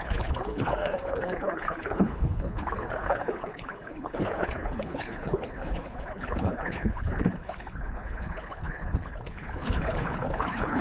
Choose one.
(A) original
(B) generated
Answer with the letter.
B